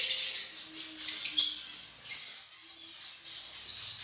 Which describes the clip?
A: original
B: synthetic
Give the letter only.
A